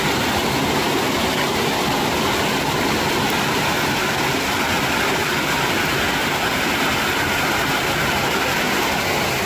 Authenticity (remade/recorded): recorded